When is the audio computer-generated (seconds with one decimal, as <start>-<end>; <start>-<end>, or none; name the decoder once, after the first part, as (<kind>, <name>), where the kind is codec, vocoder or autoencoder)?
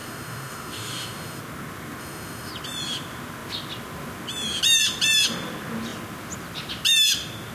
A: 0.0-1.4 (autoencoder, DAC-VAE); 2.0-2.5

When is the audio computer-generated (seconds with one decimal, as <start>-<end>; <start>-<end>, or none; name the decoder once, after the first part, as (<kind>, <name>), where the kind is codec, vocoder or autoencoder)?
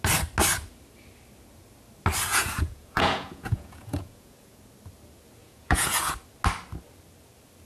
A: 2.3-4.6 (vocoder, Vocos); 5.4-6.1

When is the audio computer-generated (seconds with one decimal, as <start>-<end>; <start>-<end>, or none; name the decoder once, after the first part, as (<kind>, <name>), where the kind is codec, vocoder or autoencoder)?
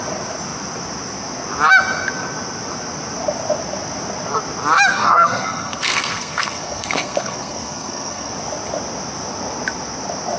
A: 4.9-8.3 (codec, SNAC)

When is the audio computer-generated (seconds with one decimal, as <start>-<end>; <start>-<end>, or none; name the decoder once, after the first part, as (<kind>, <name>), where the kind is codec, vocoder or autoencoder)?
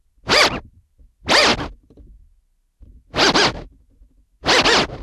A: none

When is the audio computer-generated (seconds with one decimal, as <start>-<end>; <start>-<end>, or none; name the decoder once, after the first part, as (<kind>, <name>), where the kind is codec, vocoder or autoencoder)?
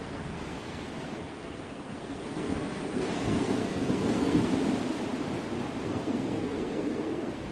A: 0.0-4.5 (codec, SNAC); 5.8-7.5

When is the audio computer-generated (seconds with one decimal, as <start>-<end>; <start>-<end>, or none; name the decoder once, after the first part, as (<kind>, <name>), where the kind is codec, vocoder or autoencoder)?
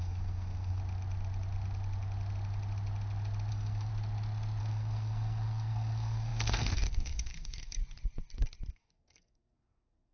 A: 0.0-0.8 (codec, SNAC); 3.5-3.9; 4.6-7.8; 8.7-10.1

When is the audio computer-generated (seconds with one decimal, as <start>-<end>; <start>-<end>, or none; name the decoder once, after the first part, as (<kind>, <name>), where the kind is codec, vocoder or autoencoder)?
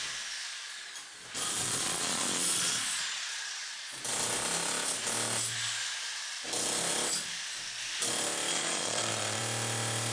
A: 1.6-4.0 (vocoder, Vocos); 8.5-9.4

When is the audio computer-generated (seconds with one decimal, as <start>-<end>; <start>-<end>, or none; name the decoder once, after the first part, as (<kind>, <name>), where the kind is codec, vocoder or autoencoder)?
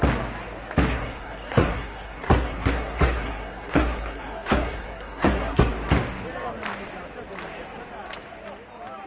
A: 0.9-5.7 (codec, SNAC)